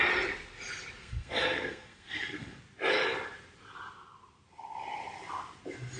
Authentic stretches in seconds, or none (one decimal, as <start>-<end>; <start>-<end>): 0.0-1.0; 2.6-6.0